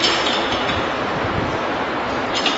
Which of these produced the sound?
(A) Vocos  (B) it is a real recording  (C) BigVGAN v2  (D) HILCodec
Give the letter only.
C